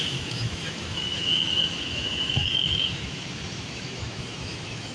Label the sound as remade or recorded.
remade